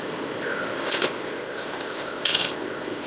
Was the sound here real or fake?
fake